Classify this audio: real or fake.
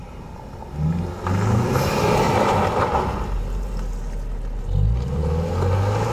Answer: real